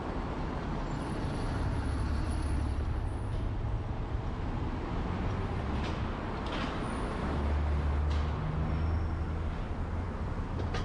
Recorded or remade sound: recorded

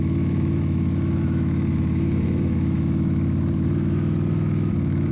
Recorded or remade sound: remade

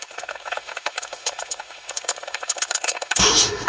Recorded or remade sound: remade